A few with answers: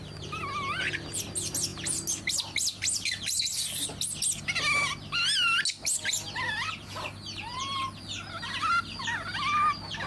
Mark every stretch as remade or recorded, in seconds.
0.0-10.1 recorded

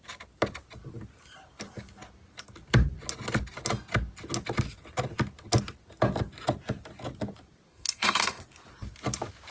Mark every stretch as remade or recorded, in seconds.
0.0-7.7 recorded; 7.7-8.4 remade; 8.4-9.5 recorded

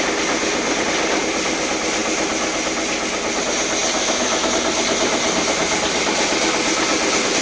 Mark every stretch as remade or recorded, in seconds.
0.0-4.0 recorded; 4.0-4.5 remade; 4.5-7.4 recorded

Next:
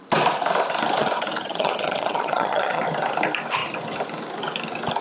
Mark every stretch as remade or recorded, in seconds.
0.0-1.0 recorded; 1.0-2.8 remade; 2.8-5.0 recorded

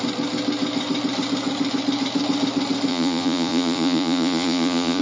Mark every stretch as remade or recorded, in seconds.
0.0-2.9 recorded; 2.9-5.0 remade

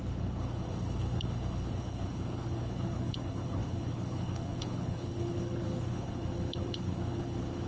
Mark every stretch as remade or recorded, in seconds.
0.0-7.7 remade

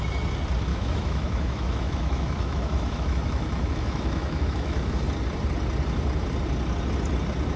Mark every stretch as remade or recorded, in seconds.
0.0-0.7 recorded; 0.7-5.0 remade; 5.0-7.6 recorded